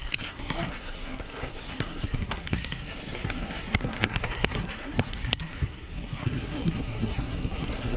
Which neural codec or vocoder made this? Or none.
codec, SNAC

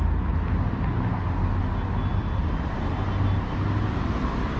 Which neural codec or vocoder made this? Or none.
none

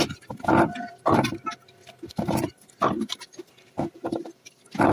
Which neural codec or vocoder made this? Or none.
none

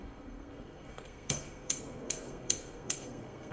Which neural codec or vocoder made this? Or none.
codec, SNAC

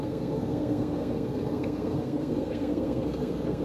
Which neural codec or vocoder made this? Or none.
codec, SNAC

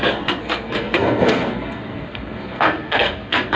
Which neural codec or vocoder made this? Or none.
codec, SNAC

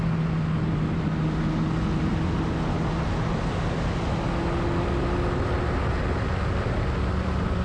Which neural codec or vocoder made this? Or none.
none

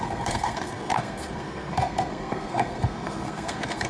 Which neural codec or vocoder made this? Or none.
codec, SNAC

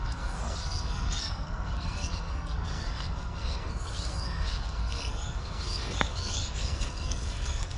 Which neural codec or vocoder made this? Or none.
codec, SNAC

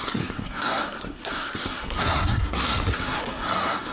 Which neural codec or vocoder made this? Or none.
codec, SNAC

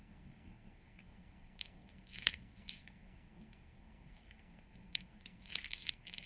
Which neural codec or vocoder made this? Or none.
codec, SNAC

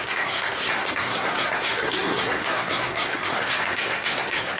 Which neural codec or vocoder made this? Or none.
codec, SNAC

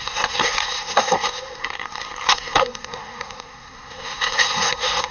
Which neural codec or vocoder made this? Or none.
codec, SNAC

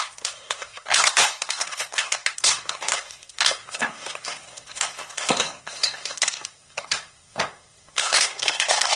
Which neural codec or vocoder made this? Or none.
codec, SNAC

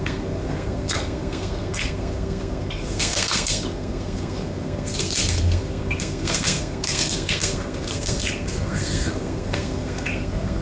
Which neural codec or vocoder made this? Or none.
codec, SNAC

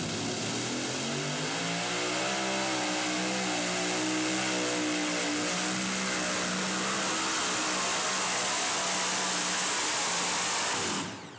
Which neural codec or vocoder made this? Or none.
none